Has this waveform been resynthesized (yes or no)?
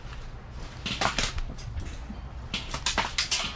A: no